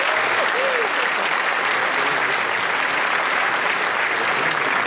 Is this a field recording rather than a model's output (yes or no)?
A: yes